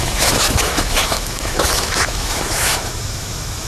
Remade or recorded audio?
remade